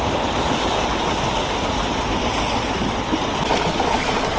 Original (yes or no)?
yes